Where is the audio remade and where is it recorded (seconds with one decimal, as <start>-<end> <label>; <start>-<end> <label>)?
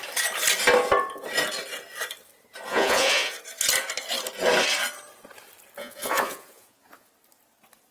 0.0-2.7 recorded; 2.7-3.3 remade; 3.3-5.8 recorded; 5.8-7.1 remade; 7.1-7.9 recorded